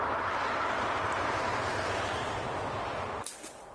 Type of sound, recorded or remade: remade